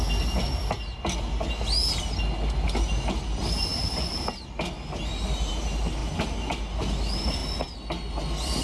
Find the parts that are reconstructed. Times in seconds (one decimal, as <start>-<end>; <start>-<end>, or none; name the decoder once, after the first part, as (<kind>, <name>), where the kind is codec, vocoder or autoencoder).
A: none